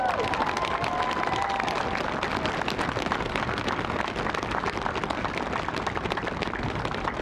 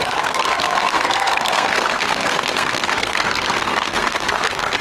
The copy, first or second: second